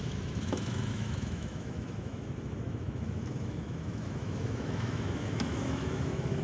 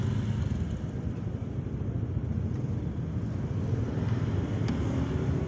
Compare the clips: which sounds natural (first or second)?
second